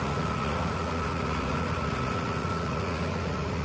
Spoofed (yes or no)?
yes